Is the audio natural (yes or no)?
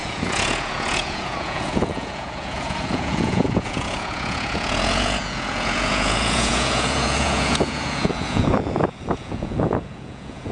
no